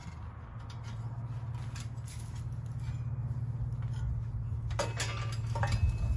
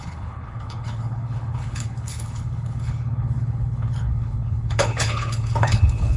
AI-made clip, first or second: second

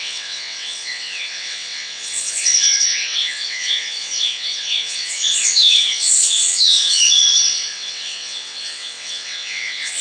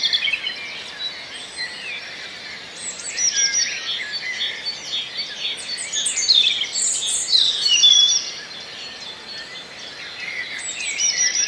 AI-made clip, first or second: first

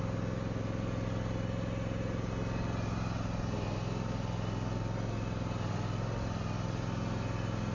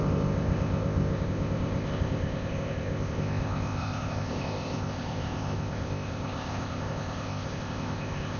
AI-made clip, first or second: second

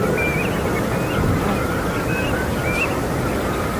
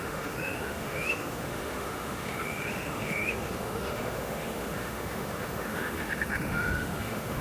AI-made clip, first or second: second